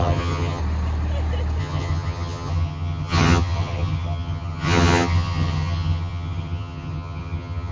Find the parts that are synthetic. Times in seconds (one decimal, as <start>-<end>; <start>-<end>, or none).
0.0-0.6; 1.6-7.7